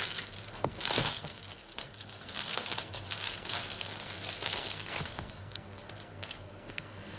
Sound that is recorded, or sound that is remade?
remade